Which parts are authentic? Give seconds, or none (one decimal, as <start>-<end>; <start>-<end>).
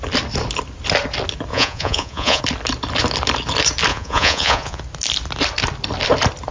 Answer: 0.0-1.5; 2.4-3.9; 4.8-6.5